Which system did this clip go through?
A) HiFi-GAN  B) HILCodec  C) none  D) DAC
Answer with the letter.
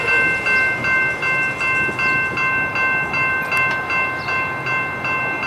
C